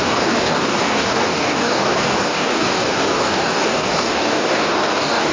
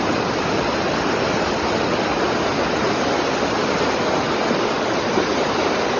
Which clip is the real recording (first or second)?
second